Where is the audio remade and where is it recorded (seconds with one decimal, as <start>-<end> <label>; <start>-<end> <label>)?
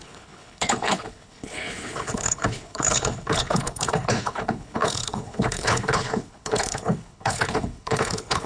0.0-8.5 remade